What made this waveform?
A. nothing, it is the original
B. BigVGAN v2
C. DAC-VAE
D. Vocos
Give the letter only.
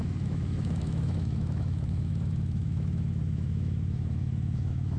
C